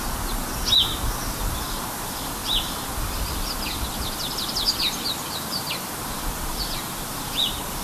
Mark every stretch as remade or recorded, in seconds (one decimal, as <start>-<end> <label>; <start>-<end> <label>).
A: 0.0-2.4 recorded; 2.4-7.1 remade; 7.1-7.8 recorded